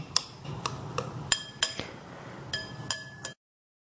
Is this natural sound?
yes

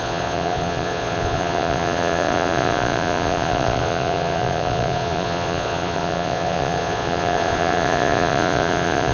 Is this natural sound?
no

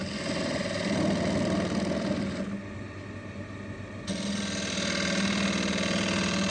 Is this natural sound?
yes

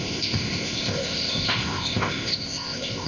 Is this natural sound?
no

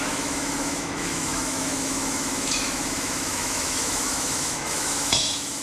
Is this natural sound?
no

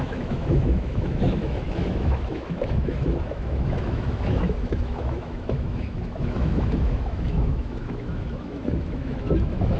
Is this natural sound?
no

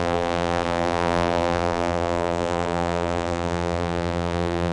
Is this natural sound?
no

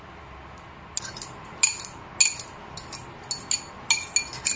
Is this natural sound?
yes